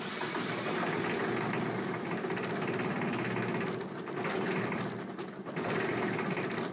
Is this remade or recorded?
recorded